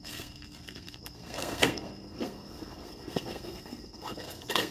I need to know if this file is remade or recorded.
remade